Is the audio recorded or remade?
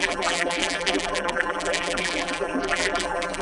remade